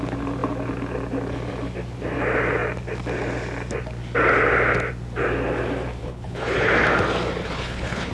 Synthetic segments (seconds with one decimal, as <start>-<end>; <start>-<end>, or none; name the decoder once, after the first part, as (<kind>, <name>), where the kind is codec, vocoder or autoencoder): 6.0-6.7 (codec, HILCodec); 7.4-8.1